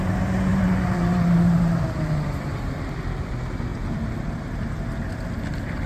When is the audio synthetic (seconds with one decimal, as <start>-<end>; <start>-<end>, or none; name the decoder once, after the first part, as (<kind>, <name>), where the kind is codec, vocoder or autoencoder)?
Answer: 0.5-2.7 (vocoder, BigVGAN v2)